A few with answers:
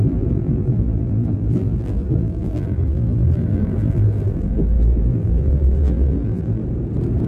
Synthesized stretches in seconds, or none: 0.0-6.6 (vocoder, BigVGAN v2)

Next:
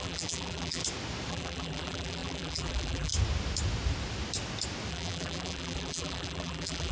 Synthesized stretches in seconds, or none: 0.0-0.8 (vocoder, BigVGAN v2); 1.3-3.1; 4.9-6.9

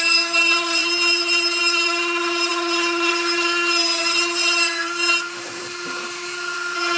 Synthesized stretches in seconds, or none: 0.0-2.5 (vocoder, BigVGAN v2); 3.1-7.0

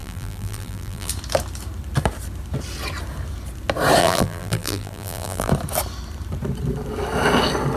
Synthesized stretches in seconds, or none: 0.0-1.1 (vocoder, BigVGAN v2); 4.0-5.5

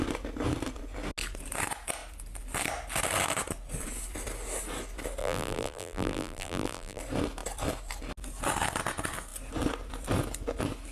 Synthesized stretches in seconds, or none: 5.2-7.0 (vocoder, BigVGAN v2)